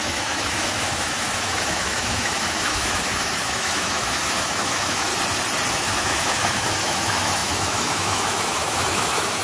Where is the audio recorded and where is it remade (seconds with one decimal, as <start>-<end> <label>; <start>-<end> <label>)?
0.0-5.1 remade; 5.1-5.7 recorded; 5.7-9.4 remade